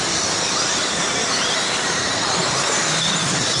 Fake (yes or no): no